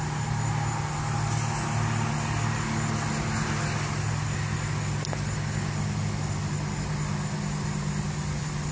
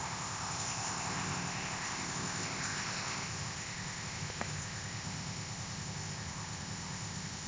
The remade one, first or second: second